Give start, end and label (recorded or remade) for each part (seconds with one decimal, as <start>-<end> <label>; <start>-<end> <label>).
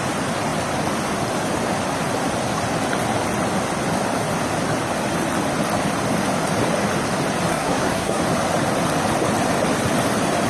0.0-7.5 recorded; 7.5-8.2 remade; 8.2-10.5 recorded